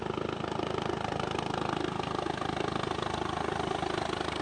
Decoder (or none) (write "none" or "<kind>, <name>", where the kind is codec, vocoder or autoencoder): none